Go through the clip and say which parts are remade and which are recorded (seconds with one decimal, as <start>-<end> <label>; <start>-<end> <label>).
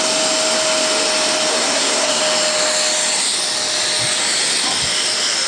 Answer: 0.0-1.5 recorded; 1.5-2.2 remade; 2.2-5.5 recorded